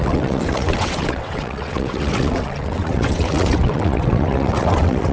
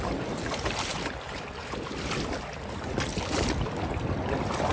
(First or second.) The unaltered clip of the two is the second